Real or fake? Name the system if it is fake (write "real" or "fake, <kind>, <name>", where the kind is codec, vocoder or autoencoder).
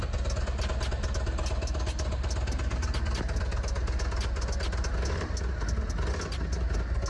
real